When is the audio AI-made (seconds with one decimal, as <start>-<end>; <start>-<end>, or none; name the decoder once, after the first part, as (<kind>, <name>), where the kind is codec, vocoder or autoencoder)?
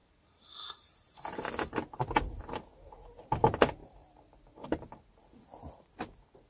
0.0-1.4 (vocoder, BigVGAN v2); 3.8-5.0